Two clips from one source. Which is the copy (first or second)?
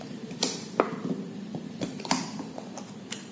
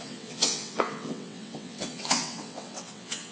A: second